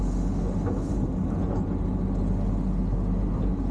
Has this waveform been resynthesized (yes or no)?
no